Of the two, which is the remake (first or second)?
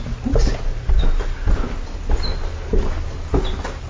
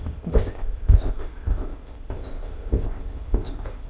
second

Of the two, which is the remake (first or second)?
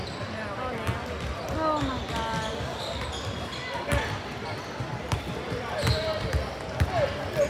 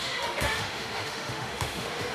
second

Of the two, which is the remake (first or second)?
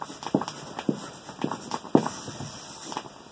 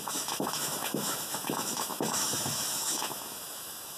second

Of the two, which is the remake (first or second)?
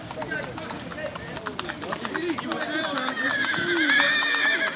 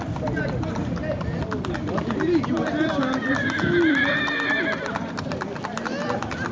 second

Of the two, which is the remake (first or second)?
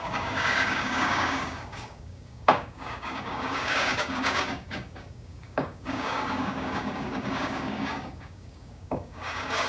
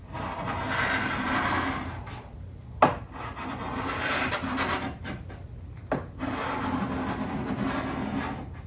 first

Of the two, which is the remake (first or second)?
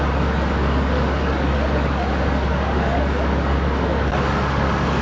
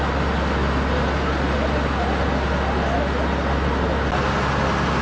first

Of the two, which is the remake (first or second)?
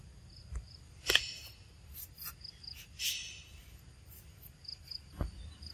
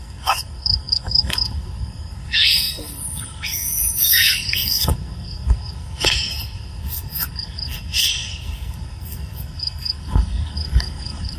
second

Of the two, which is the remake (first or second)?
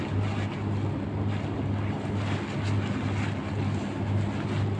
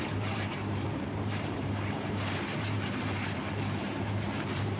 second